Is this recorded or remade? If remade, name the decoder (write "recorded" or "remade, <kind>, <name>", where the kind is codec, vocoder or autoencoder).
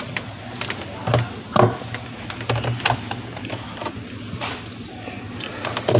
recorded